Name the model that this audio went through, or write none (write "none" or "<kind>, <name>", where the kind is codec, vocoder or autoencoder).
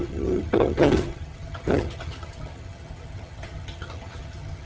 vocoder, HiFi-GAN